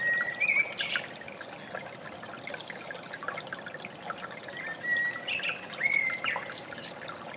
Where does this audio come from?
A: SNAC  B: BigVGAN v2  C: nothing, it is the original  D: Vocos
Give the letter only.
C